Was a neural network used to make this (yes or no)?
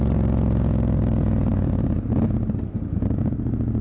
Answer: no